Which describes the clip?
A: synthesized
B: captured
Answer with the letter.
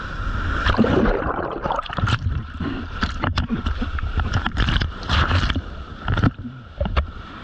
A